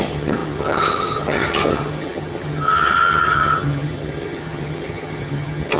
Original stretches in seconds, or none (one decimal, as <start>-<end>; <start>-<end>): none